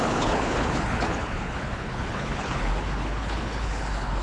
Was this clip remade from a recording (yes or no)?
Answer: yes